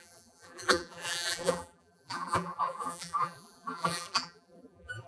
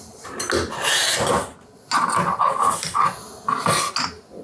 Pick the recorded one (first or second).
second